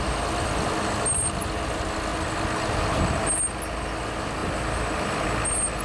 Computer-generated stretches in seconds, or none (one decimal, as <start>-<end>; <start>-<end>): none